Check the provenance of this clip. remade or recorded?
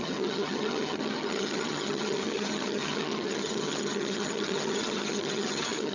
remade